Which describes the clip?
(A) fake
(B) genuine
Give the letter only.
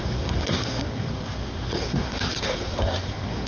A